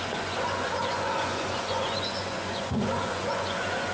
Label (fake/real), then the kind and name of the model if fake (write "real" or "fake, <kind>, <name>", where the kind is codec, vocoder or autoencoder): fake, vocoder, Vocos